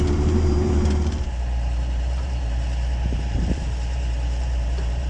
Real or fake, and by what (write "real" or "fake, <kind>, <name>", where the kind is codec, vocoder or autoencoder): fake, vocoder, BigVGAN v2